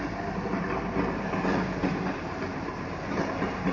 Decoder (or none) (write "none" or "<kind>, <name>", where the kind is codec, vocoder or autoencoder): vocoder, BigVGAN v2